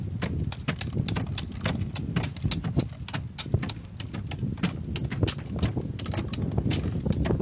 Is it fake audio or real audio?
real